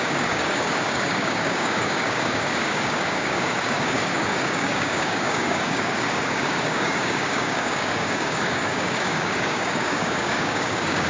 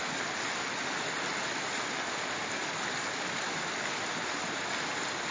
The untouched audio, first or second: second